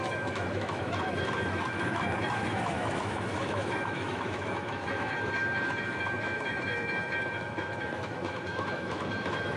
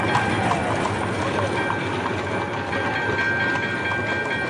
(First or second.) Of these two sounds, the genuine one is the second